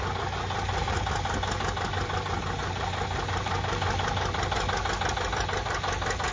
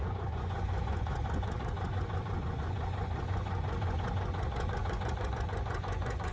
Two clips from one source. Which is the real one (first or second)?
first